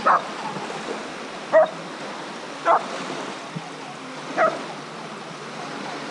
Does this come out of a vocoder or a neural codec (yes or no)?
no